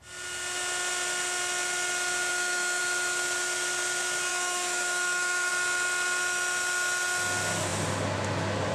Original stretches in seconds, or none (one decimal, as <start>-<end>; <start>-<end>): 0.0-2.3; 2.8-4.3; 5.5-8.7